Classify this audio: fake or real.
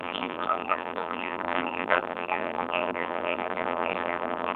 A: fake